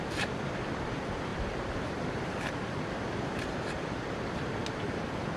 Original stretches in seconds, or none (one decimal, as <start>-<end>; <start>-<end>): 0.0-1.3; 4.5-5.4